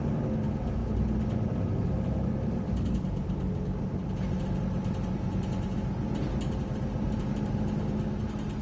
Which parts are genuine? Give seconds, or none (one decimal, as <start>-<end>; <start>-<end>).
0.0-8.6